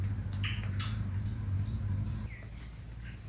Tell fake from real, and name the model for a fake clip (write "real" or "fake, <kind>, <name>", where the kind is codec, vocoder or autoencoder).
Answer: real